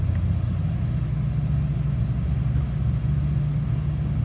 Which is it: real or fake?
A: real